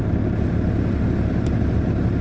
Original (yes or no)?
yes